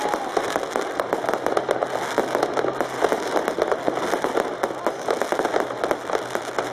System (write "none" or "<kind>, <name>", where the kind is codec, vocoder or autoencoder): none